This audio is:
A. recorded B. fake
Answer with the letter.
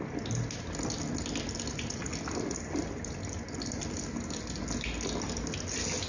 A